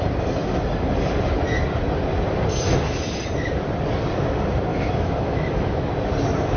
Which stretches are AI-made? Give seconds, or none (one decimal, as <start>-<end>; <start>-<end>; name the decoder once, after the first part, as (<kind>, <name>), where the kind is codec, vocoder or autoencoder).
4.7-5.9 (autoencoder, DAC-VAE)